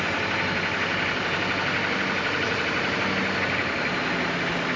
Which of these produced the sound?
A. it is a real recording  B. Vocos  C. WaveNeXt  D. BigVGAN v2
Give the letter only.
A